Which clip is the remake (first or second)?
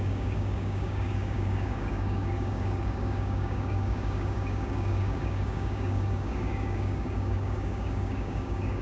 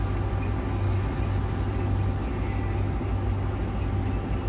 first